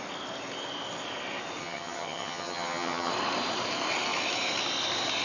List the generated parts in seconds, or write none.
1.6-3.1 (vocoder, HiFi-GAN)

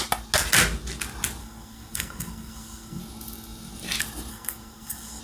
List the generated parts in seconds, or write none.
1.4-3.0 (codec, SNAC); 4.3-5.2

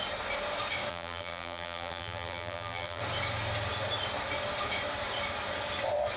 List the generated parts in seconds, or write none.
0.9-3.0 (vocoder, BigVGAN v2)